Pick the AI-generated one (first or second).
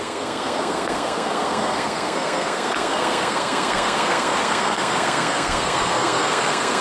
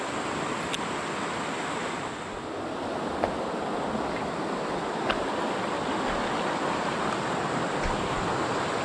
first